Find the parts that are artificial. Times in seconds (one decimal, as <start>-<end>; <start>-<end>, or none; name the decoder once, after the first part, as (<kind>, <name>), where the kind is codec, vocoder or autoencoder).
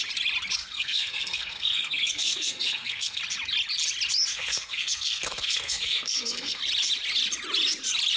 0.6-3.2 (codec, SNAC); 4.3-6.6